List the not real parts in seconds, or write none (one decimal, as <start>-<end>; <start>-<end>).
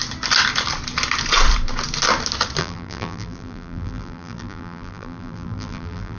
2.6-6.2